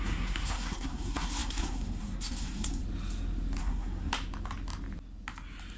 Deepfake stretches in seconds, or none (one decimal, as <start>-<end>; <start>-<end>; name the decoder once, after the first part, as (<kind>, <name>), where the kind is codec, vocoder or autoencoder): 0.0-2.8 (codec, SNAC); 3.6-4.1